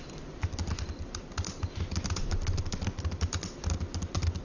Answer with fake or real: real